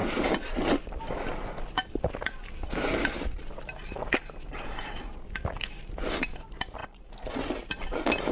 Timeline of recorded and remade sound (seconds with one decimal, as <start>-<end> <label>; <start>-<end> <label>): 0.0-8.3 recorded